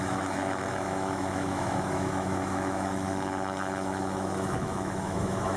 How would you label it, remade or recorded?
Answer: remade